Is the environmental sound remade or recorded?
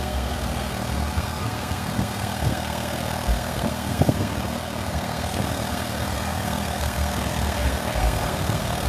remade